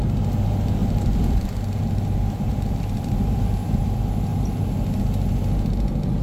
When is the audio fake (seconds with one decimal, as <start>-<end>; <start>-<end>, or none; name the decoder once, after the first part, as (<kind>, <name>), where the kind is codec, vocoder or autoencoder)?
none